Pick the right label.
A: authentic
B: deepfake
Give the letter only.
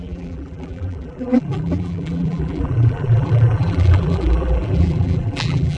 B